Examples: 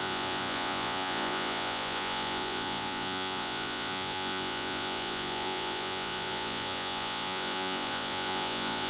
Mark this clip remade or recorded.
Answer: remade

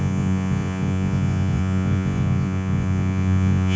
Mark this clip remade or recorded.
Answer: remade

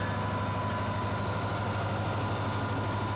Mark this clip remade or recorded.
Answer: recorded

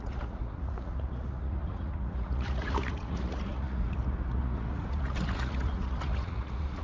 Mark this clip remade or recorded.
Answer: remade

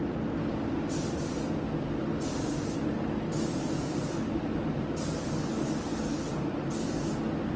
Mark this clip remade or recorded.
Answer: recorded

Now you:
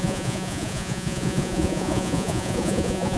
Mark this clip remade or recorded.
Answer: remade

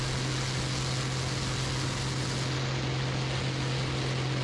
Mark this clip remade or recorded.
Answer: recorded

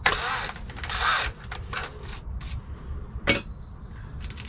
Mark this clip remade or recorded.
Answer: recorded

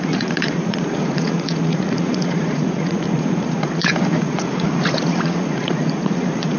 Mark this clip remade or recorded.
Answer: remade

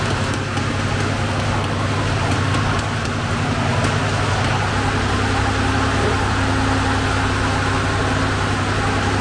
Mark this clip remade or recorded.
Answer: recorded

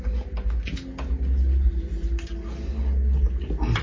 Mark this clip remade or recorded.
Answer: recorded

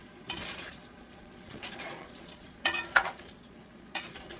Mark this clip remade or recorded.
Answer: remade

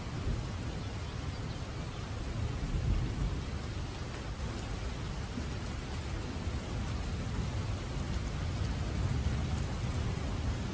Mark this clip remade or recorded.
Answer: recorded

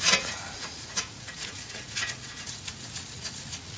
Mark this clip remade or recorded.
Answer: remade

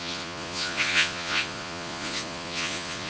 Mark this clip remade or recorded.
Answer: remade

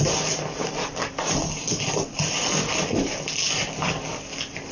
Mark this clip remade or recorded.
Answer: recorded